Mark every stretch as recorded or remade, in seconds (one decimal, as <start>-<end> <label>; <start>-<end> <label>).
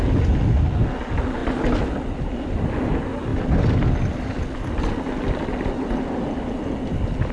0.0-7.3 recorded